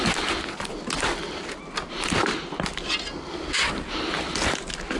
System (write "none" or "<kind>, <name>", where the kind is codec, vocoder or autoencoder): none